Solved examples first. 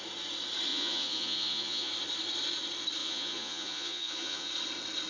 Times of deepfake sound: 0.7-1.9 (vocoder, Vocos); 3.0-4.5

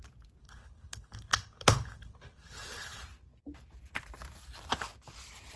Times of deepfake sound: 0.4-3.0 (codec, HILCodec)

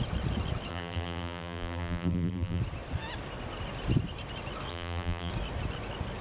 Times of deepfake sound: 0.7-2.6 (vocoder, BigVGAN v2); 4.7-5.3

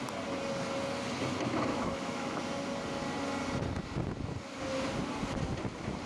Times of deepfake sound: 1.7-2.4 (autoencoder, DAC-VAE)

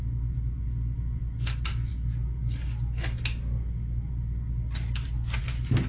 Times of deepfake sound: none

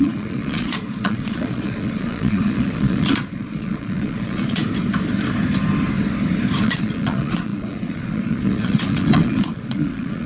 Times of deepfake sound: 0.0-4.6 (vocoder, Vocos); 6.6-10.3